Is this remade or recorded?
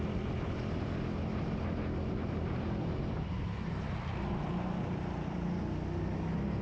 recorded